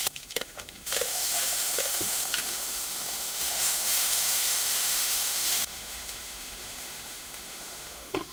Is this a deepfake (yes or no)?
yes